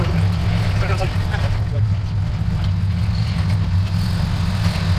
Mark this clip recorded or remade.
recorded